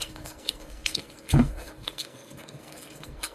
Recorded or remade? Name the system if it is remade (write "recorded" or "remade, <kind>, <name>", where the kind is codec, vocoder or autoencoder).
remade, codec, SNAC